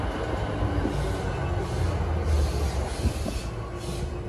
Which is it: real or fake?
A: real